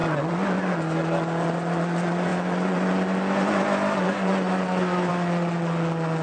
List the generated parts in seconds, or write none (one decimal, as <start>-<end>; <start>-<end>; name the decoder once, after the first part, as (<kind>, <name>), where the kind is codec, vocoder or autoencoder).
none